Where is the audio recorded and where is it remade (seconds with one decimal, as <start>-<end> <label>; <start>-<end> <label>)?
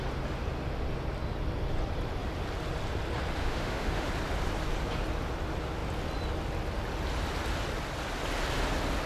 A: 0.0-3.4 recorded; 3.4-4.1 remade; 4.1-9.1 recorded